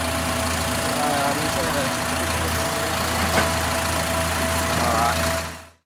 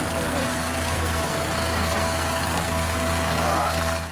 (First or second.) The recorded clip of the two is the first